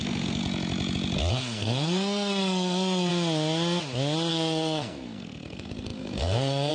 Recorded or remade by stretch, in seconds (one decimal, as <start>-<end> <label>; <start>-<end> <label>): 0.0-0.4 remade; 0.4-1.3 recorded; 1.3-3.1 remade; 3.1-4.3 recorded; 4.3-6.7 remade